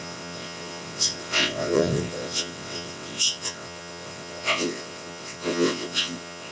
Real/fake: fake